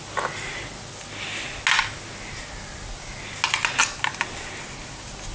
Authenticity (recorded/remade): recorded